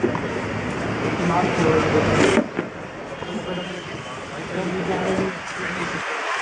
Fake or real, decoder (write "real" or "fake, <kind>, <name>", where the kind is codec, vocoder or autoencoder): real